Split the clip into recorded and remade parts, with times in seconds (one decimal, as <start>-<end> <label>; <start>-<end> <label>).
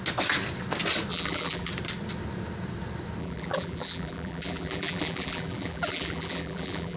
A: 0.0-1.1 recorded; 1.1-1.7 remade; 1.7-3.2 recorded; 3.2-7.0 remade